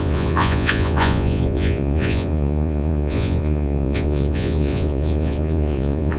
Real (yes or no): no